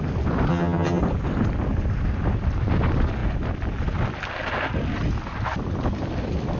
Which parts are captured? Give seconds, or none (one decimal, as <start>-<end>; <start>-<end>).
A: 0.0-0.5; 1.0-6.6